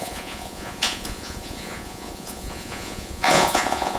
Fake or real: fake